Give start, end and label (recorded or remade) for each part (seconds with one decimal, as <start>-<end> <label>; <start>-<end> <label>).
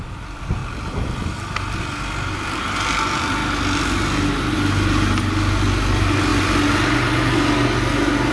0.0-8.3 recorded